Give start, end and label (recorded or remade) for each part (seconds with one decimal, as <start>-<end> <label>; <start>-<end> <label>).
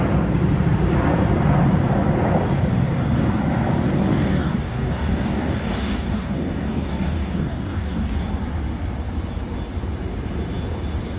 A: 0.0-4.1 recorded; 4.1-8.2 remade; 8.2-11.2 recorded